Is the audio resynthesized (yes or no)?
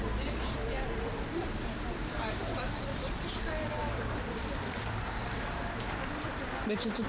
yes